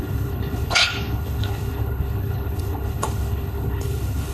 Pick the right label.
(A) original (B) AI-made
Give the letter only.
B